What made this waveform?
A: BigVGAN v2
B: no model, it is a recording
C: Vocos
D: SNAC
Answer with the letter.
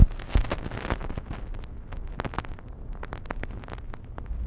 B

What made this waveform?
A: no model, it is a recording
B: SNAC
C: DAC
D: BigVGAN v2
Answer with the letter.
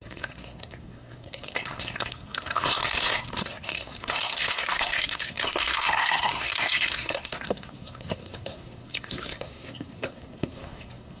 B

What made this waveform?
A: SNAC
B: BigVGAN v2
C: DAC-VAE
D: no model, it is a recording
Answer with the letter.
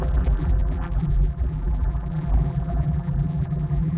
B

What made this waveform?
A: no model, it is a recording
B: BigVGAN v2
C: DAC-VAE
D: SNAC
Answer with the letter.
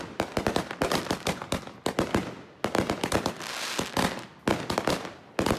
A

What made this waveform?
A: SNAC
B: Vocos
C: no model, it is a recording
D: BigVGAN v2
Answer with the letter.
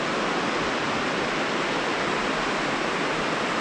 C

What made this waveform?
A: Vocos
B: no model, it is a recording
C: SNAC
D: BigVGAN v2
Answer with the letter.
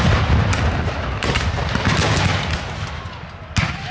B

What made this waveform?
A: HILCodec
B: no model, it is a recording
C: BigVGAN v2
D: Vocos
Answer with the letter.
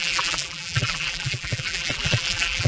C